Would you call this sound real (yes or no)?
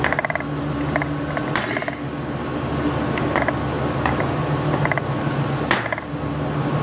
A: yes